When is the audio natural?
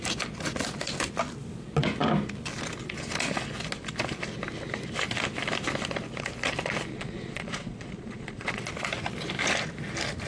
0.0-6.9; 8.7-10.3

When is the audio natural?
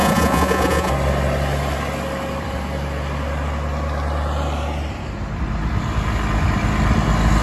0.9-7.4